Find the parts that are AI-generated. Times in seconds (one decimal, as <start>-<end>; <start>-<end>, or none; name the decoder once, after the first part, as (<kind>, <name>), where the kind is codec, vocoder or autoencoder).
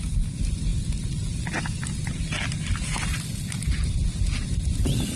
none